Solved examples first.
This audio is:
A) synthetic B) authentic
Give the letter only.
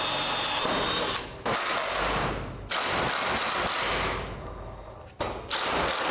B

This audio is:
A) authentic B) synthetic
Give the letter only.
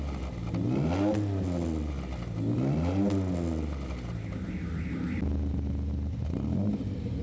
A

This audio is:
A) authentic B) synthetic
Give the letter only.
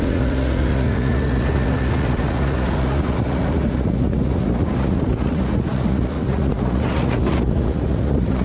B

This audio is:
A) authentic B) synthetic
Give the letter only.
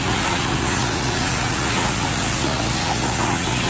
B